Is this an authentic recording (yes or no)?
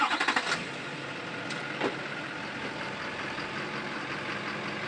yes